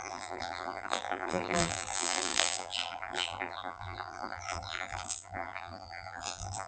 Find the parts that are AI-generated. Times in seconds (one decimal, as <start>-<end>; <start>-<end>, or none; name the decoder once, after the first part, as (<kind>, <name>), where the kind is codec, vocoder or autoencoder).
0.0-6.7 (vocoder, BigVGAN v2)